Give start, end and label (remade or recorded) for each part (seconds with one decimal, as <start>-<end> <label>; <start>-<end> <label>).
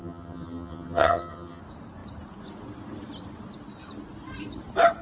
0.0-1.6 remade; 1.6-5.0 recorded